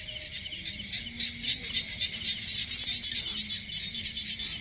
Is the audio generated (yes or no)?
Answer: no